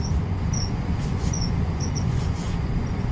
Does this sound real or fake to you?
fake